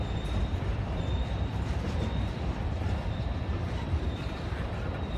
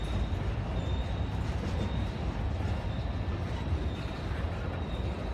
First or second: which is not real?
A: first